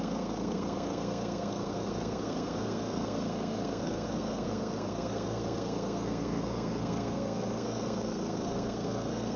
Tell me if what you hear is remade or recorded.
remade